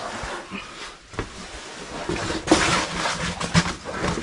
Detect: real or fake real